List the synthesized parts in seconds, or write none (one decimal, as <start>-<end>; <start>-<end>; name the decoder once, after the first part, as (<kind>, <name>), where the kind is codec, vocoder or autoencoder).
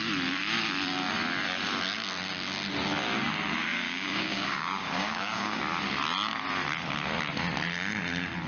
3.7-5.6 (codec, DAC)